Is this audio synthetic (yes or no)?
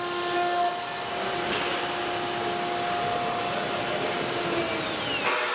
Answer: no